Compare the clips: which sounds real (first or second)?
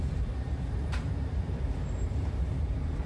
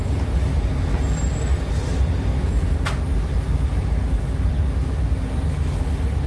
second